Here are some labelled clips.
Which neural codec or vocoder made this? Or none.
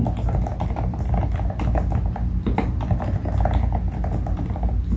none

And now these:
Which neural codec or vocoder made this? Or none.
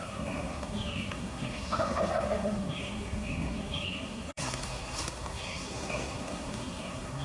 codec, SNAC